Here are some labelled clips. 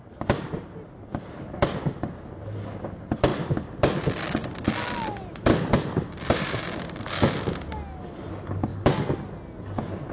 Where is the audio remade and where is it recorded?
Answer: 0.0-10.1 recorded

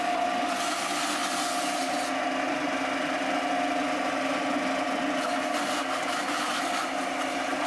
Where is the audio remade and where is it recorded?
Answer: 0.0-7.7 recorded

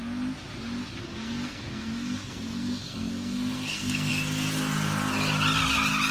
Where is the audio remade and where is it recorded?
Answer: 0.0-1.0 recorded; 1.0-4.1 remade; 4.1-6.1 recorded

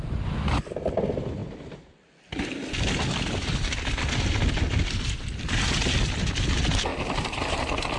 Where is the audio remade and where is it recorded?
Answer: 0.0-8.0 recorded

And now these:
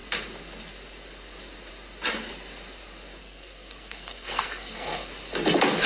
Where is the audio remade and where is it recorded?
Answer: 0.0-3.2 recorded; 3.2-5.1 remade; 5.1-5.9 recorded

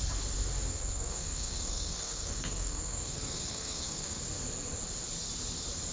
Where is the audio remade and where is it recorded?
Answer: 0.0-0.7 recorded; 0.7-4.2 remade; 4.2-5.9 recorded

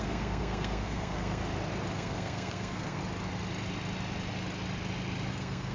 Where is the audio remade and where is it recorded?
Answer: 0.0-1.4 remade; 1.4-1.9 recorded; 1.9-3.0 remade; 3.0-5.3 recorded; 5.3-5.7 remade